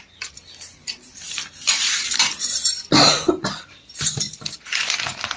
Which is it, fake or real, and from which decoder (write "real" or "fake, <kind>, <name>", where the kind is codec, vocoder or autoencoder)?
fake, vocoder, BigVGAN v2